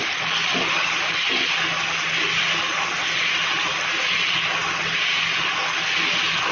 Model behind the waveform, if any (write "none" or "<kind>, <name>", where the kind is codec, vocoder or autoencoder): none